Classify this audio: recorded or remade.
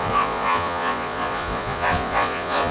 remade